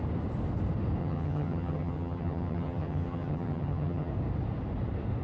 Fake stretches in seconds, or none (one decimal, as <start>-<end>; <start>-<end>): 1.0-4.1